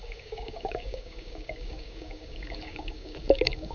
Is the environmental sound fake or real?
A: fake